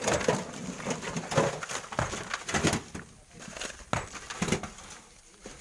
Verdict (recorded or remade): recorded